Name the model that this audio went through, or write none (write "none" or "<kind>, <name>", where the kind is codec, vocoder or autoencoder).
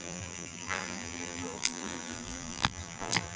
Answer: vocoder, BigVGAN v2